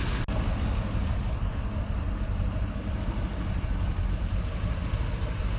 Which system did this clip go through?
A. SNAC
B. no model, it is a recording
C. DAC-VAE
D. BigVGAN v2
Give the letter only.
B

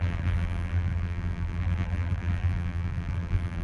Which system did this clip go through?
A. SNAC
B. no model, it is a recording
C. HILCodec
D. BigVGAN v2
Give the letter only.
D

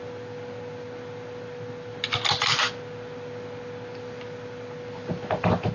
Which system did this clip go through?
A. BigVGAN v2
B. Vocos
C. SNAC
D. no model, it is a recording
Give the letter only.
D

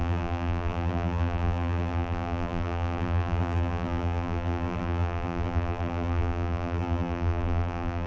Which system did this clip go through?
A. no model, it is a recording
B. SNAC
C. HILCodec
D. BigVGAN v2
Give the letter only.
D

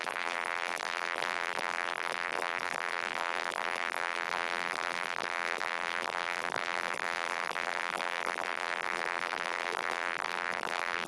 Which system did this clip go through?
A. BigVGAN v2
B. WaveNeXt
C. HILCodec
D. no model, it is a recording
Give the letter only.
A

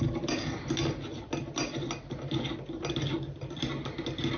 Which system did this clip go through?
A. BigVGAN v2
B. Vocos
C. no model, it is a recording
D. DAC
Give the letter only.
C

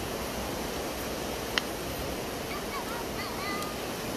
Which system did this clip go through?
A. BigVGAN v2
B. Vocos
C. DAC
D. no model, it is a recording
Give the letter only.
D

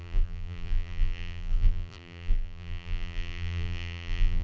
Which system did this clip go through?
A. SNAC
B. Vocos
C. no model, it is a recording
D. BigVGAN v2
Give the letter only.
D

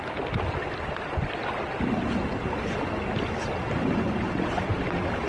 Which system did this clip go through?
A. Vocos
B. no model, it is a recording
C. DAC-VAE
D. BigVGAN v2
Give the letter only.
B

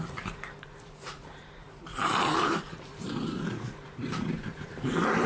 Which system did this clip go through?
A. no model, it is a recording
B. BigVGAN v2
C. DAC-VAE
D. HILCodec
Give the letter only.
B